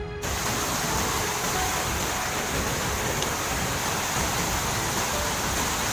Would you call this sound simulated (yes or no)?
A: no